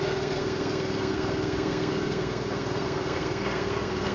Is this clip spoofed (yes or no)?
yes